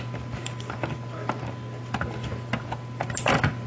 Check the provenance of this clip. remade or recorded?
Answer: recorded